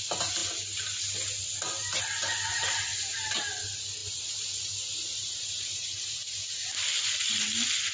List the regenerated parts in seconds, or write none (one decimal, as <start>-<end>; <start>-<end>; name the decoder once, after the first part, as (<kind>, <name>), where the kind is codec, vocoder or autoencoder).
2.9-3.5 (vocoder, BigVGAN v2); 4.0-6.4